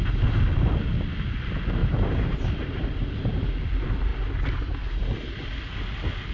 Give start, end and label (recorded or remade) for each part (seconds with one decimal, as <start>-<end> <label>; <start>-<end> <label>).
0.0-1.8 recorded; 1.8-2.5 remade; 2.5-6.3 recorded